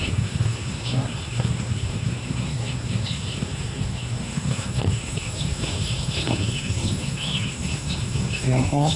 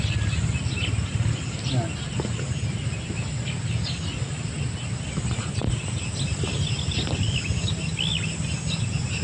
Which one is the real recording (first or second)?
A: second